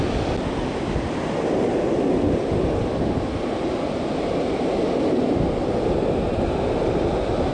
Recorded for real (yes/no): yes